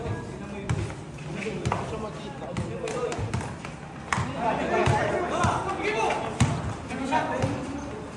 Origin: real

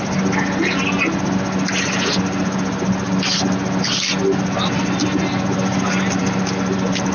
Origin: real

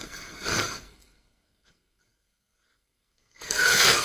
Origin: fake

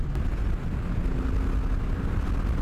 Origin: real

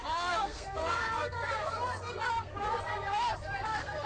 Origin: fake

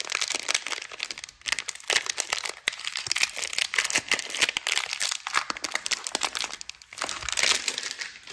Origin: real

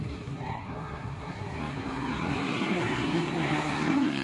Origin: fake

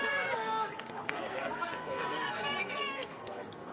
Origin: fake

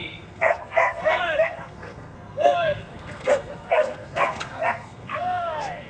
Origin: fake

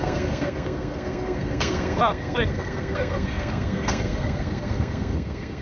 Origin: fake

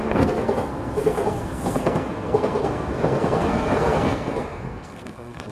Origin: fake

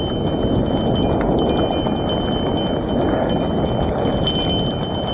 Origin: real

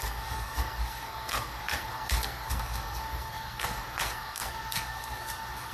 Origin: fake